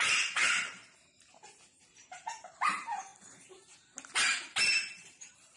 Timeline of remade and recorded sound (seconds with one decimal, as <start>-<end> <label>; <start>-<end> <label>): 0.0-0.4 remade; 0.4-1.9 recorded; 1.9-3.1 remade; 3.1-4.5 recorded; 4.5-5.6 remade